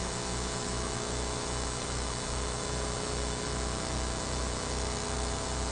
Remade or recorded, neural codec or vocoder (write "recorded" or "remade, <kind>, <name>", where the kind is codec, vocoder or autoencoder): remade, autoencoder, DAC-VAE